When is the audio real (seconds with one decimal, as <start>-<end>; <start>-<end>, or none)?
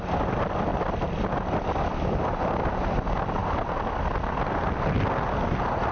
0.0-5.9